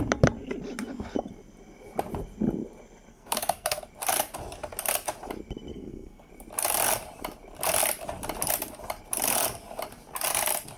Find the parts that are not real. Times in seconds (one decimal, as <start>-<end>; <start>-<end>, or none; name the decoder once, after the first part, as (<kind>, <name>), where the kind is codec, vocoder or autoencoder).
3.1-3.8 (codec, SNAC); 5.7-6.3